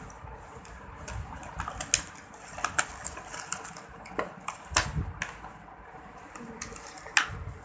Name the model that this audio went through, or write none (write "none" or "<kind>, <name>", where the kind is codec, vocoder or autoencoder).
none